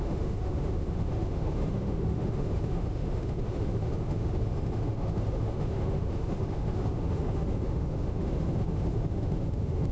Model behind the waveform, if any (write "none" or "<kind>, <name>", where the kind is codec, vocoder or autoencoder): autoencoder, DAC-VAE